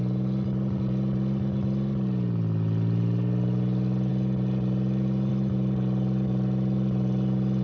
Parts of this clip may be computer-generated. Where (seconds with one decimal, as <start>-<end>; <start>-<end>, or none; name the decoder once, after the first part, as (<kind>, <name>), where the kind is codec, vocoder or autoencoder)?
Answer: none